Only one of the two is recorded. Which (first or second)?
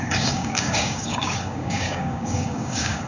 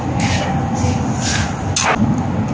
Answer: second